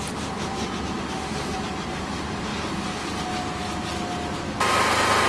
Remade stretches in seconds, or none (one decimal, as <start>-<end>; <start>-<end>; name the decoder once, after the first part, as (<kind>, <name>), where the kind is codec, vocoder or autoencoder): 0.0-2.5 (vocoder, BigVGAN v2)